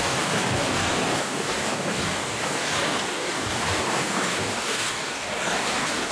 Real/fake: fake